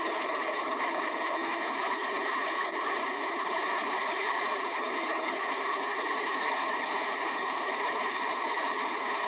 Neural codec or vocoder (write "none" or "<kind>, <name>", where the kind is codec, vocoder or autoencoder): codec, HILCodec